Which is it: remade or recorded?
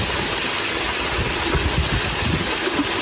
recorded